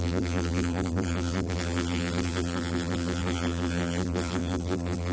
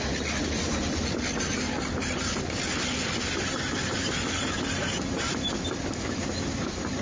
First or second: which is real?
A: second